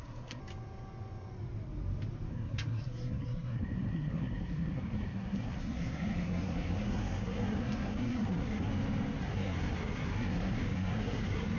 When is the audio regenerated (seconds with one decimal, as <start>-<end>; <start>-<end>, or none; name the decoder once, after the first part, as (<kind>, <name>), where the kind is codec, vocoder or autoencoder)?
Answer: 0.0-0.4 (codec, SNAC); 2.3-8.7; 9.2-11.6